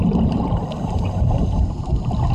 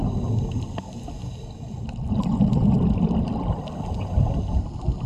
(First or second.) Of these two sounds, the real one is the second